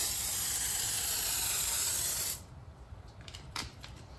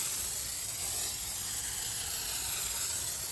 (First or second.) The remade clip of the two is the first